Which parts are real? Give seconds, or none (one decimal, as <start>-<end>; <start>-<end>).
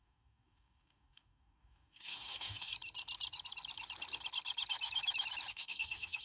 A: 2.7-5.5